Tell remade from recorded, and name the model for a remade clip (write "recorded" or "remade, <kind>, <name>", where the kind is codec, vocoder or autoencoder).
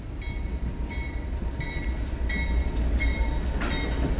recorded